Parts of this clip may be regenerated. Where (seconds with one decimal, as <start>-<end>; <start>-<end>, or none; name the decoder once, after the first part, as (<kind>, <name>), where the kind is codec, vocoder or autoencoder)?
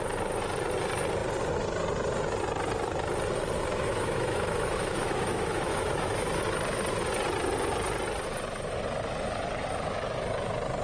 3.7-6.4 (autoencoder, DAC-VAE)